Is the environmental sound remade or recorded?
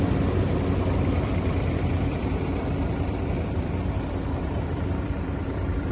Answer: remade